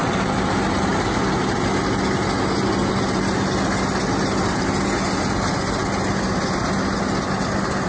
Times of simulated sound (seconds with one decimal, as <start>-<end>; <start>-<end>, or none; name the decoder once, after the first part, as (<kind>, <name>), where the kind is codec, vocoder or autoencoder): none